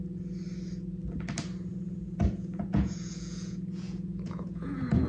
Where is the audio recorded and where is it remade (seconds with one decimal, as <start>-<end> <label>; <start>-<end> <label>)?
0.0-1.7 recorded; 1.7-5.1 remade